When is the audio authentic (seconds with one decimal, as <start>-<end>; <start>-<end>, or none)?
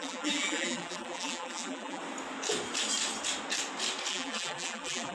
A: 2.0-4.1